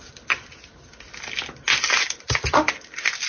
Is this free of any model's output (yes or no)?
yes